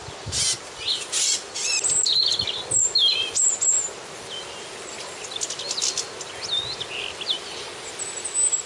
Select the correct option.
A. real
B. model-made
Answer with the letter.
A